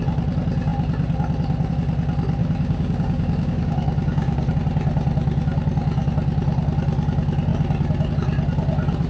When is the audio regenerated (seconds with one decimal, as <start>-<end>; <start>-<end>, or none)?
2.4-4.5